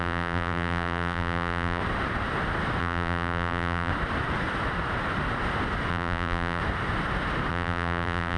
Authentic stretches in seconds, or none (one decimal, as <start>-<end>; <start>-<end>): 1.8-2.8; 3.9-5.9; 6.6-7.5

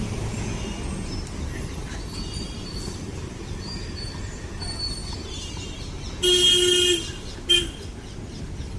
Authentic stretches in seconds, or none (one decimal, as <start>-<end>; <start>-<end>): 0.0-8.8

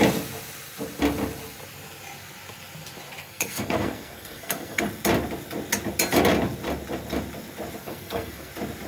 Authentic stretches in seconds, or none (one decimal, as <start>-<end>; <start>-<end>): 0.0-3.2; 4.8-7.8; 8.5-8.9

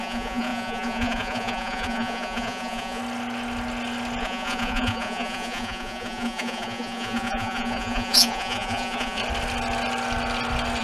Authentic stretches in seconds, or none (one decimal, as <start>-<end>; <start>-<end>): 3.0-4.2; 9.2-10.8

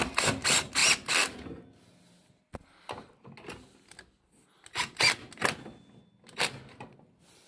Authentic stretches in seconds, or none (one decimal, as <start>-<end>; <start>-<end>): 0.0-7.5